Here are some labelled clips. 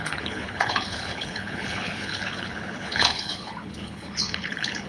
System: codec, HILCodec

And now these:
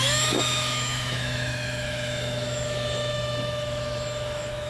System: autoencoder, DAC-VAE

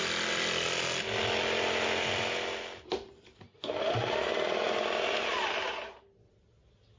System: none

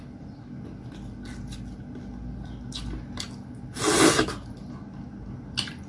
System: none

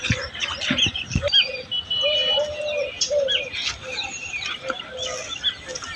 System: none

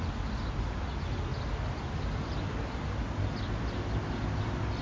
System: none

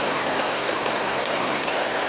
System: codec, SNAC